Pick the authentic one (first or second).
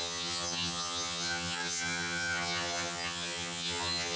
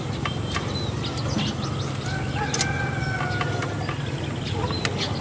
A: second